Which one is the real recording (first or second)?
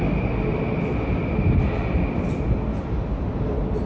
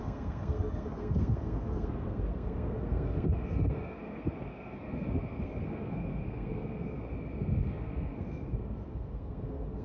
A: first